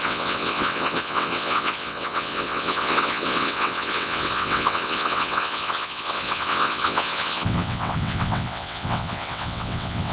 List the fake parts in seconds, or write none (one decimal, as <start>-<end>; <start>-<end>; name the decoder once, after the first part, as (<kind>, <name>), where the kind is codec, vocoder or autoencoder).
0.0-10.1 (vocoder, WaveNeXt)